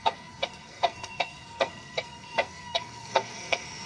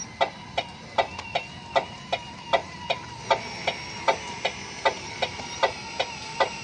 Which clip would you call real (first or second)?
second